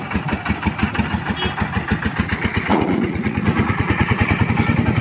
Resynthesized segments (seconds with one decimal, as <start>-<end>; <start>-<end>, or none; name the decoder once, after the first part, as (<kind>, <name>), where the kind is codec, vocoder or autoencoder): 2.7-4.5 (vocoder, Vocos)